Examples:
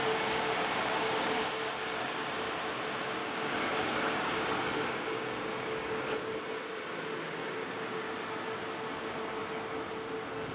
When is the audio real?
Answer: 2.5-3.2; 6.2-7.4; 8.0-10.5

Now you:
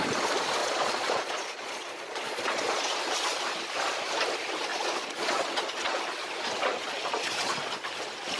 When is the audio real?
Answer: 0.0-0.6; 3.0-4.7; 6.0-6.7; 7.7-8.4

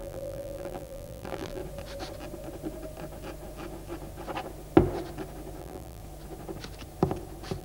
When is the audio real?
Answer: 1.6-5.6; 6.0-7.6

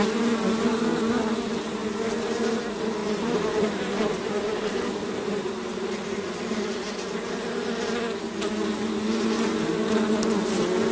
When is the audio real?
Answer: 0.0-3.0; 7.8-10.9

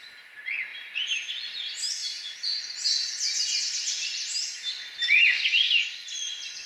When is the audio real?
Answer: 0.0-0.7; 1.3-2.0; 2.6-4.1; 4.7-6.7

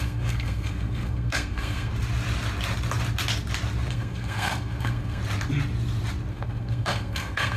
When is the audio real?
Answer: 1.9-3.9; 5.2-6.3

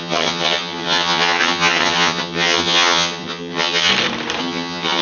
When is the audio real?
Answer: 3.9-4.4